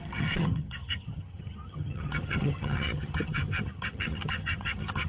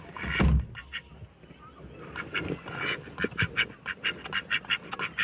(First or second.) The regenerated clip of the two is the first